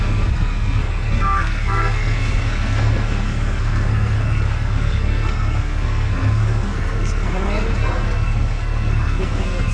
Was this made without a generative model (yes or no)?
no